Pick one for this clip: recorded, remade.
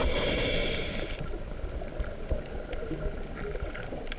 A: recorded